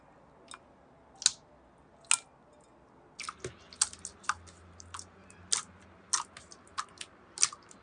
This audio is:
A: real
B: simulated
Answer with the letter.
A